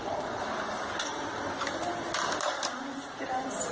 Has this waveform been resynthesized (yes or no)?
no